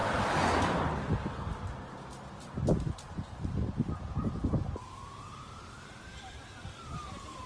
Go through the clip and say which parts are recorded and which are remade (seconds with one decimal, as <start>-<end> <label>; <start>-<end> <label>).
0.0-2.3 recorded; 2.3-7.5 remade